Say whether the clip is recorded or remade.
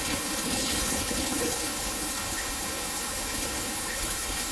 remade